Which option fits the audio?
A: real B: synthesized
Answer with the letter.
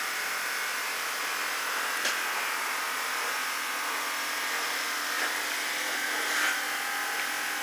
A